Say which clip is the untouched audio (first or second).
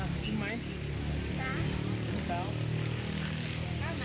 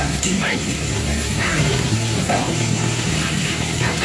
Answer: first